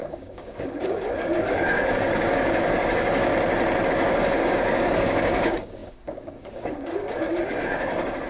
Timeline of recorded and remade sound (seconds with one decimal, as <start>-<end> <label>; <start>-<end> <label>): 0.0-3.3 remade; 3.3-3.9 recorded; 3.9-8.3 remade